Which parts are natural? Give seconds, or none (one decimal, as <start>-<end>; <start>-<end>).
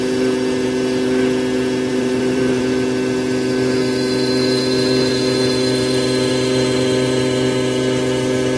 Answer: 0.0-1.9; 2.6-8.6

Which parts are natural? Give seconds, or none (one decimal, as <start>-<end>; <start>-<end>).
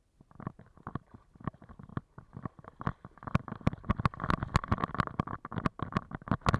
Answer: 0.0-6.6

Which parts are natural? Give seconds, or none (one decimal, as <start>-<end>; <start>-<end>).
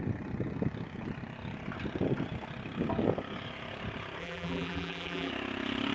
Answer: 0.0-4.2; 5.3-5.9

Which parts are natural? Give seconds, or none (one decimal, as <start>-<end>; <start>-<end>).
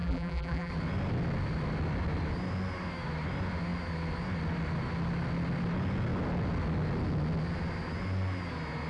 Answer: 0.7-8.9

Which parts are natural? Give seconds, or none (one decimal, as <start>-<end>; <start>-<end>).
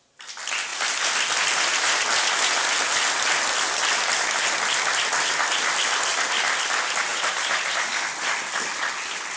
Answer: 0.0-1.7; 2.3-7.1; 7.9-9.4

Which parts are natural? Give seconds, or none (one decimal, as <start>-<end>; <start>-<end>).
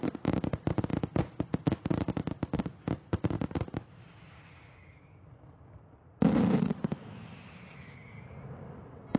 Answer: 0.9-1.9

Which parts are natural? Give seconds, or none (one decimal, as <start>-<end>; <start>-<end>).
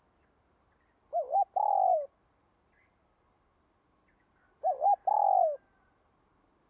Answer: 0.0-6.7